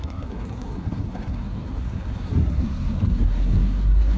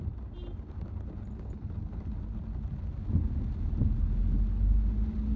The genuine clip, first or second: second